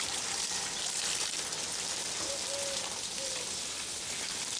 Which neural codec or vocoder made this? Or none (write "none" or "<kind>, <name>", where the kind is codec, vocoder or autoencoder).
none